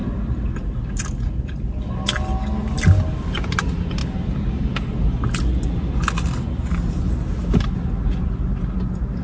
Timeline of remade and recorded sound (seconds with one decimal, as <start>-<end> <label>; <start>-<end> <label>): 0.0-9.2 recorded